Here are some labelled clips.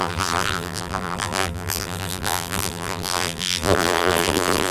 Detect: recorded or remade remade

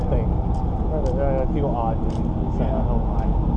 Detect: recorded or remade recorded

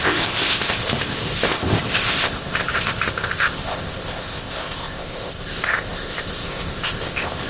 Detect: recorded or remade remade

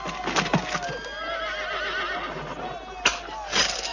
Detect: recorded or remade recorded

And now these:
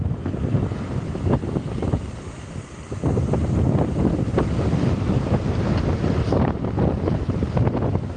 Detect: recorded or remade recorded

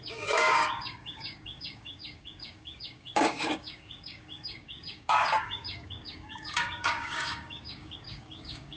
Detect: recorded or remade remade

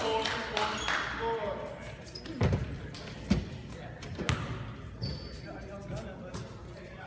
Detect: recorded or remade recorded